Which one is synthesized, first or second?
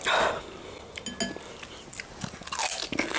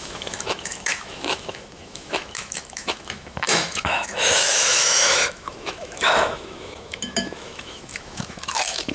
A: second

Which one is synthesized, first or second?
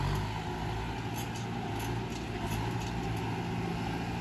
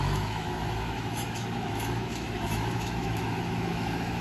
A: second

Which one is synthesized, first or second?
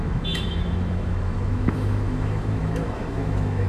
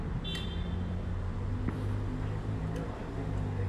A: first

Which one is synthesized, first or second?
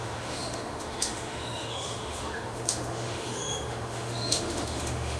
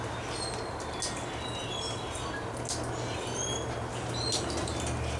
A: first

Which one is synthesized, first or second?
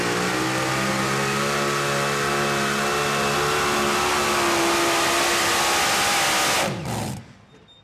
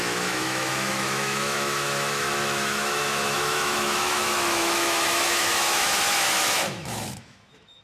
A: second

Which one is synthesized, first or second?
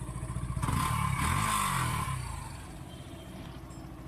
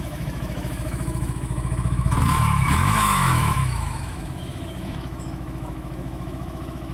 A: second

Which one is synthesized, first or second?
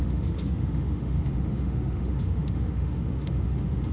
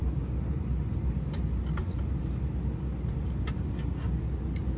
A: first